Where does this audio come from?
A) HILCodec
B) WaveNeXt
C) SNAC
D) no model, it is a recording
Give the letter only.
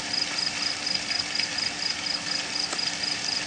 D